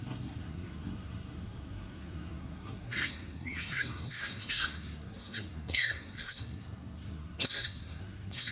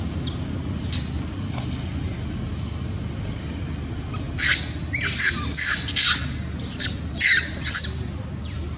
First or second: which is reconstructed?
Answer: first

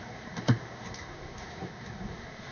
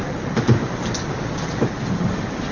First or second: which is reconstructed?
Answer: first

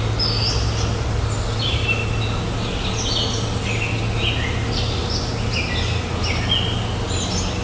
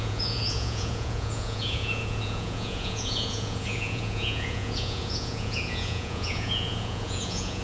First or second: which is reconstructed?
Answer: second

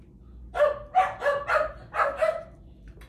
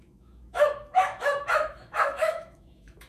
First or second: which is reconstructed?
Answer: second